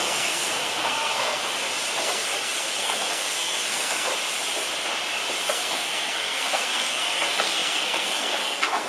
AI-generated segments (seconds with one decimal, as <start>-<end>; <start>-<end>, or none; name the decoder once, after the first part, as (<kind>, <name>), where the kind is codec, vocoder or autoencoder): 0.0-1.4 (codec, SNAC); 2.0-4.1; 5.4-8.9

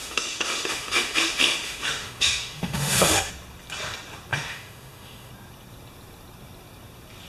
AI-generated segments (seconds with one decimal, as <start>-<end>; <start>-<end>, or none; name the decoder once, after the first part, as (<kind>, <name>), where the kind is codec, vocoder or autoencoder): 0.0-3.3 (autoencoder, DAC-VAE); 4.3-5.3

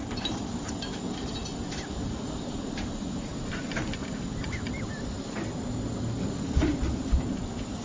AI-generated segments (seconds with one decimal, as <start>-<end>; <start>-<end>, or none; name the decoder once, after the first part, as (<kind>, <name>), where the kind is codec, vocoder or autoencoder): 0.0-1.4 (vocoder, BigVGAN v2); 2.5-3.2; 6.7-7.8

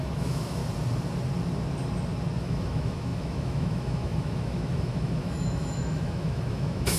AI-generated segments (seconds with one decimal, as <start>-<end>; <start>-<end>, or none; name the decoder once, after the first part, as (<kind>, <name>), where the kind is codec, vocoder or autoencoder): 0.0-0.6 (autoencoder, DAC-VAE); 2.4-7.0

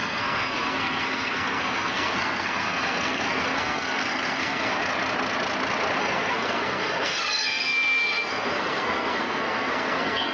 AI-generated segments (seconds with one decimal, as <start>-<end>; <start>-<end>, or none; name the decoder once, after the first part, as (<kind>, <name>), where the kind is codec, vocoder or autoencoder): 0.0-4.8 (codec, SNAC); 6.0-10.3

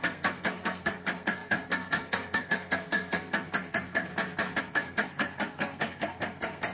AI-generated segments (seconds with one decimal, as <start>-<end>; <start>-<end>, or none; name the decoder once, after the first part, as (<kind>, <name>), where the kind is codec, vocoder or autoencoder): 0.0-4.1 (codec, SNAC); 4.6-6.7